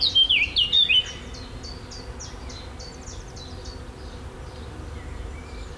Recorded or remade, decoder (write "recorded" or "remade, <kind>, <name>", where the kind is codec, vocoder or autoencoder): recorded